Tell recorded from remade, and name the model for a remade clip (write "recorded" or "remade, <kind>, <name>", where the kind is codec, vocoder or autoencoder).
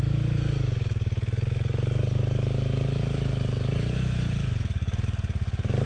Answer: remade, codec, DAC